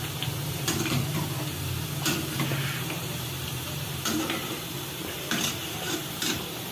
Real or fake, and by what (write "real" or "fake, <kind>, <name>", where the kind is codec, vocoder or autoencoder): fake, vocoder, BigVGAN v2